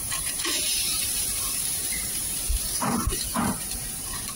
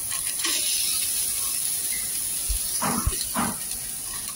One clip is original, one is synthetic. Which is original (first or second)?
second